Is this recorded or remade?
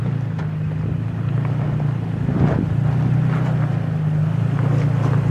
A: recorded